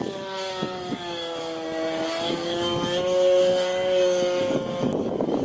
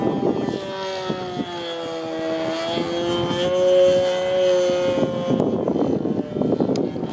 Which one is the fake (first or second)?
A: first